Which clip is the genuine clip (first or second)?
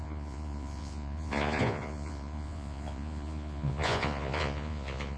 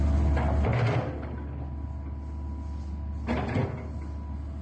second